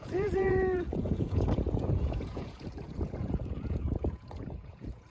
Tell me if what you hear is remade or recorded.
remade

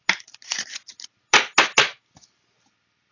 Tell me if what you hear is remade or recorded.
recorded